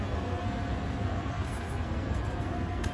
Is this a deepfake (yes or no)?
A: yes